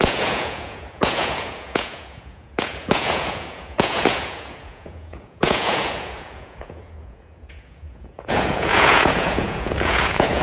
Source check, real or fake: fake